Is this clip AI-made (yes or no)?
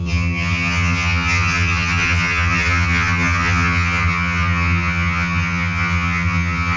yes